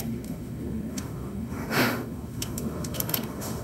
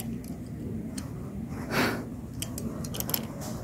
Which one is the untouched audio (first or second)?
second